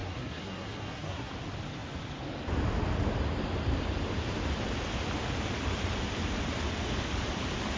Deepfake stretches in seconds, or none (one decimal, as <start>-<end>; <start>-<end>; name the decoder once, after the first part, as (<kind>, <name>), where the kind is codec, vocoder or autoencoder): 0.0-1.3 (codec, SNAC)